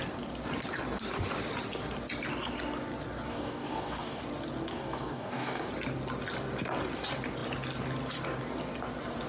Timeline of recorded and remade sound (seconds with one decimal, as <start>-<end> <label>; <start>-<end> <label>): 0.0-3.3 recorded; 3.3-4.2 remade; 4.2-4.7 recorded; 4.7-5.7 remade; 5.7-9.3 recorded